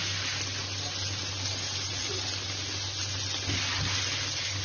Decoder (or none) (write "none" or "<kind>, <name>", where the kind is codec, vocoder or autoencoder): none